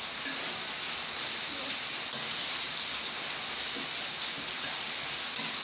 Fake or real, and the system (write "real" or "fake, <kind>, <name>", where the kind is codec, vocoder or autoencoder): real